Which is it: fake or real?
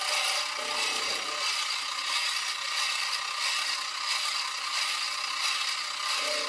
real